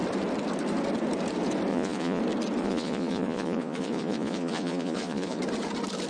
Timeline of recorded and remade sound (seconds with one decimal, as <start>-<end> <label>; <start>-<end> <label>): 0.0-1.7 recorded; 1.7-2.2 remade; 2.2-2.6 recorded; 2.6-5.4 remade; 5.4-6.1 recorded